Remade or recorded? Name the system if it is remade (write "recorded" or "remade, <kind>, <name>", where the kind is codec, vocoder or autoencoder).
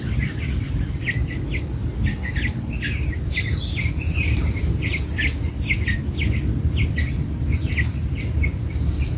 recorded